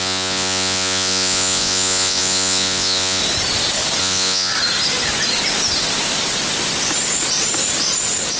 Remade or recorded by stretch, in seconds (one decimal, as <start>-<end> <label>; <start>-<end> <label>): 0.0-3.2 remade; 3.2-4.0 recorded; 4.0-4.5 remade; 4.5-8.4 recorded